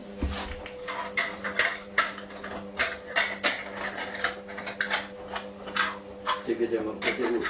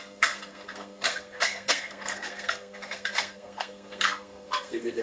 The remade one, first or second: second